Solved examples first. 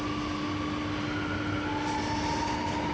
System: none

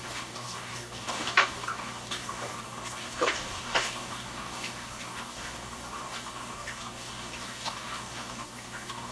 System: codec, DAC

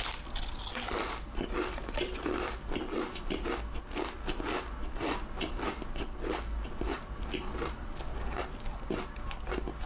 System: none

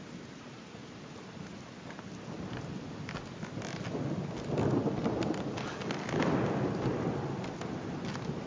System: none